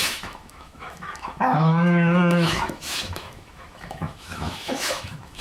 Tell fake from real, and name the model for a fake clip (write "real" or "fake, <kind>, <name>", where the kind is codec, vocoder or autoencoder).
fake, autoencoder, DAC-VAE